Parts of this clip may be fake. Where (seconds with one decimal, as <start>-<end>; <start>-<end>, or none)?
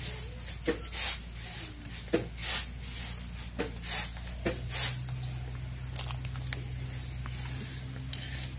none